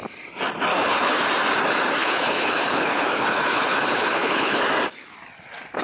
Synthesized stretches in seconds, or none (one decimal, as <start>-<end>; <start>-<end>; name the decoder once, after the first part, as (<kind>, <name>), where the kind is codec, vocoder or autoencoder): 0.7-1.2 (codec, HILCodec); 2.0-4.6